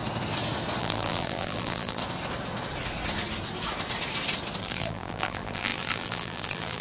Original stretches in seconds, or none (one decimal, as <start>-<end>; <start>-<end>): 0.0-0.8; 2.0-4.6